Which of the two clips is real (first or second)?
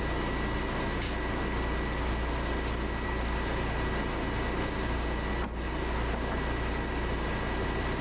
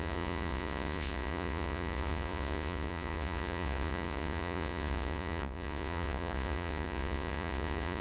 first